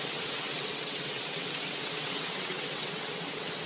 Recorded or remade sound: remade